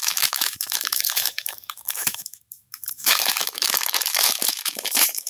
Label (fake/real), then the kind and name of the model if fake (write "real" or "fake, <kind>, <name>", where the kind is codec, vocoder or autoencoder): fake, autoencoder, DAC-VAE